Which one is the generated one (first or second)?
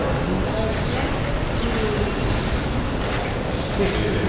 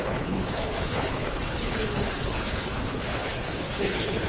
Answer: second